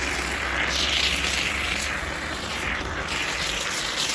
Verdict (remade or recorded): remade